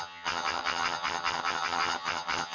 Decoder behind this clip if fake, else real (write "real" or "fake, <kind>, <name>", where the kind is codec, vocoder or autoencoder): fake, vocoder, HiFi-GAN